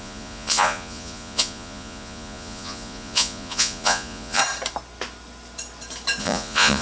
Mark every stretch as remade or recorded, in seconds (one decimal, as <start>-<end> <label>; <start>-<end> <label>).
0.0-4.4 remade; 4.4-6.2 recorded; 6.2-6.8 remade